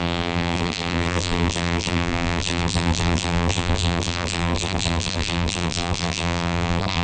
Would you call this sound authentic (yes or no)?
no